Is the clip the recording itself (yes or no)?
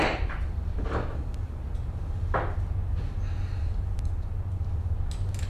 yes